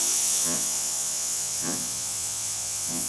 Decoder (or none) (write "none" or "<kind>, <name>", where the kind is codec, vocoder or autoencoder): vocoder, Vocos